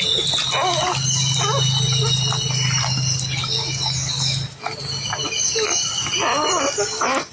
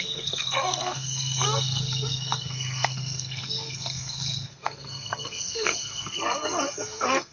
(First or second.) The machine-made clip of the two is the second